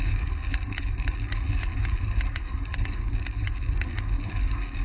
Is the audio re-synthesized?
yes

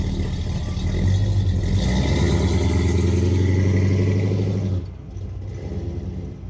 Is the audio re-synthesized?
no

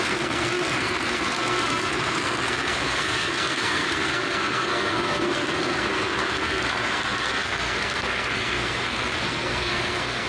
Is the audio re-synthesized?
yes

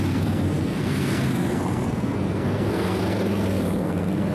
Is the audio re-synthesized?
yes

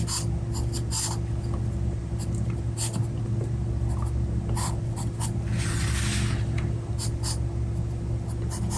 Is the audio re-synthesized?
no